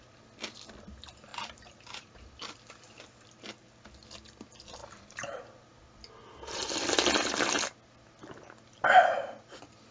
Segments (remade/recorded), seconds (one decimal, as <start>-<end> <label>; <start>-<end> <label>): 0.0-1.3 recorded; 1.3-2.4 remade; 2.4-4.8 recorded; 4.8-5.4 remade; 5.4-9.9 recorded